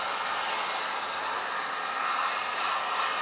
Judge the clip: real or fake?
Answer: real